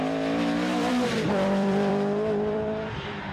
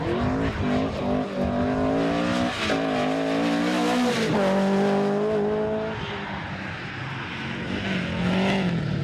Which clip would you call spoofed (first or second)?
first